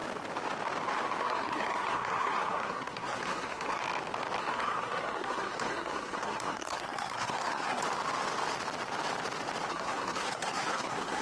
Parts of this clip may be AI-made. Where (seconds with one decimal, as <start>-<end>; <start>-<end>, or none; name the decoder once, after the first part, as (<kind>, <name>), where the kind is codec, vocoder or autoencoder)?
1.2-3.8 (codec, SNAC); 4.4-7.8; 9.7-11.2